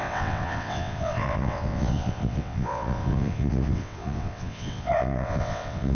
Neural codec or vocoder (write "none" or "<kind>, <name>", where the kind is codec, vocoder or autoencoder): vocoder, WaveNeXt